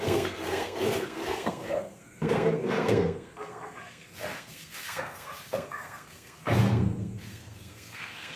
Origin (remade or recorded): remade